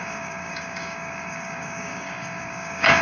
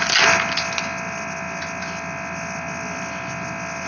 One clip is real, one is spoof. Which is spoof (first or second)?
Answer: first